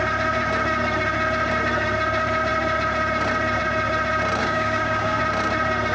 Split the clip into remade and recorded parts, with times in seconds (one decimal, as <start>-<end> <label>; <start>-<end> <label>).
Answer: 0.0-4.4 recorded; 4.4-5.2 remade; 5.2-5.9 recorded